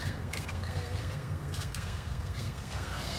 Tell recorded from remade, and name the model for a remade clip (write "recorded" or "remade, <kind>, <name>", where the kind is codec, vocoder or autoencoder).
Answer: remade, codec, SNAC